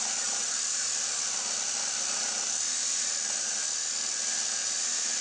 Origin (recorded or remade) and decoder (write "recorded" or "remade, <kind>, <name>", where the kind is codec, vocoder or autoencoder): recorded